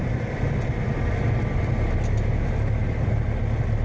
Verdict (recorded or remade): recorded